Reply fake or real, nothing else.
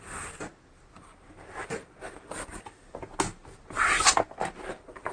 real